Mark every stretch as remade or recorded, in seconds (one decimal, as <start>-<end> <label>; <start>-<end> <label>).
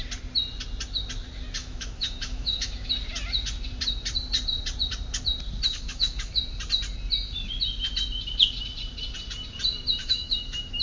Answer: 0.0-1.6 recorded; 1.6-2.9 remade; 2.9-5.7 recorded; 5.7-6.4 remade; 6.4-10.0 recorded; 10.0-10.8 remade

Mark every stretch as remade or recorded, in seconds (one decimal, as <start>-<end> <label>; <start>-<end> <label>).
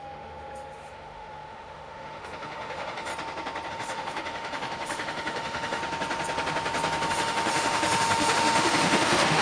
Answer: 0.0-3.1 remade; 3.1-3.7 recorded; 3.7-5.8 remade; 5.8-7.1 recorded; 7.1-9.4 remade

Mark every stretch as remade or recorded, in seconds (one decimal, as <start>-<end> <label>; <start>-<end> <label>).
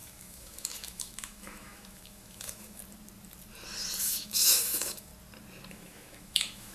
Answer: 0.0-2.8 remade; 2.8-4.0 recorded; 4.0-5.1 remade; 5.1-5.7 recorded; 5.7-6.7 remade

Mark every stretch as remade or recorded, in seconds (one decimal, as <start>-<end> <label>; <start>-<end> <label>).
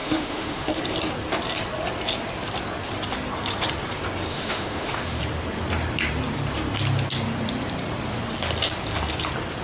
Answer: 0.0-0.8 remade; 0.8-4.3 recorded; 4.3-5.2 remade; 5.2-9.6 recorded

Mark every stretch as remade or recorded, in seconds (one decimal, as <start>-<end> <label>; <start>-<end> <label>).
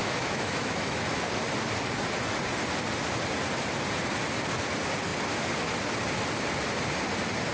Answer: 0.0-1.1 remade; 1.1-7.5 recorded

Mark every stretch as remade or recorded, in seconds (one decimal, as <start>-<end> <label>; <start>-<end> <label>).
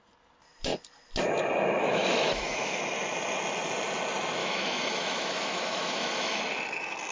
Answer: 0.0-1.8 recorded; 1.8-2.8 remade; 2.8-4.4 recorded; 4.4-6.4 remade; 6.4-7.1 recorded